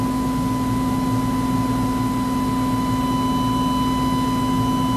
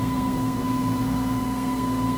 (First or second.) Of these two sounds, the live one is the first